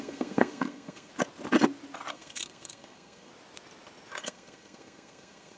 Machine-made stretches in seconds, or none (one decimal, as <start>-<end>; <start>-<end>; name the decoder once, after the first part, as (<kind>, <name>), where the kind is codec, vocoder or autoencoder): 0.0-1.1 (codec, SNAC); 2.1-3.3; 4.2-5.6